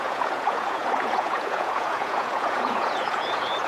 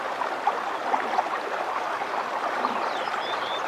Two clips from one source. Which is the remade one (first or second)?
first